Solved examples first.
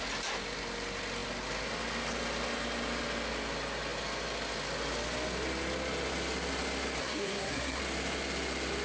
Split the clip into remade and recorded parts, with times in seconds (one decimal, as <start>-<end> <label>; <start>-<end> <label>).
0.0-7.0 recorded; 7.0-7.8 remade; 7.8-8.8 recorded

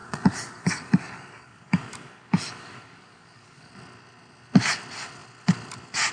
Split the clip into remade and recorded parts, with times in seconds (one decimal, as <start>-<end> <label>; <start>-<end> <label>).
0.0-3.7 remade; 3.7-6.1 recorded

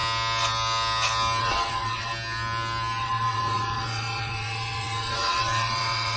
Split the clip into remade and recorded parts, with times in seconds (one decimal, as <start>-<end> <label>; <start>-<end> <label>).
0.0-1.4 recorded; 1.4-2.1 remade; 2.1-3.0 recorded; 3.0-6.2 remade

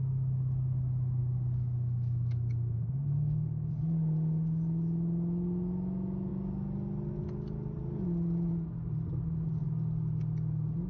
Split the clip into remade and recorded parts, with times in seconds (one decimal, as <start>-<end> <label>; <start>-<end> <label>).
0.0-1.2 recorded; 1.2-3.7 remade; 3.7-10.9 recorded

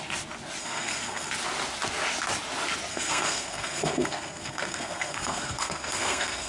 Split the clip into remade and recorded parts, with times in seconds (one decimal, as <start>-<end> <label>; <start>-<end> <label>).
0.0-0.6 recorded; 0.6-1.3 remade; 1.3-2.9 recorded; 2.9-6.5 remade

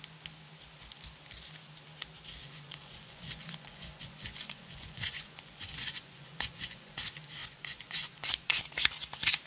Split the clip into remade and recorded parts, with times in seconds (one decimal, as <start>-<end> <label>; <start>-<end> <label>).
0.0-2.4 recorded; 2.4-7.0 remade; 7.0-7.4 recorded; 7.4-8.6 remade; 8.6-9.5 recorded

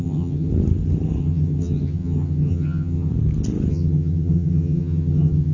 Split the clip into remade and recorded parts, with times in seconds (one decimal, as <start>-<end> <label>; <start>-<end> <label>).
0.0-0.5 remade; 0.5-1.2 recorded; 1.2-3.1 remade; 3.1-3.7 recorded; 3.7-5.5 remade